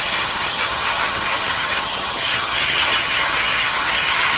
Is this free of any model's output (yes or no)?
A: no